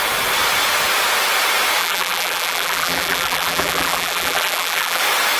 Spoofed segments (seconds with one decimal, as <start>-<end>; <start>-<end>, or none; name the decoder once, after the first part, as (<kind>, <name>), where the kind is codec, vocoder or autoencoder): 1.8-5.0 (vocoder, BigVGAN v2)